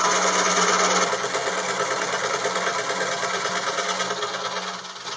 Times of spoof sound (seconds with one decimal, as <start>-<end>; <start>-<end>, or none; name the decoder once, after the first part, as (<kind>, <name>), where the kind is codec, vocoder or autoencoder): none